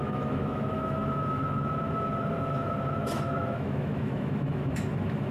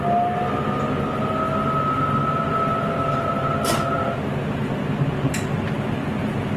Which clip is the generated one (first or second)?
first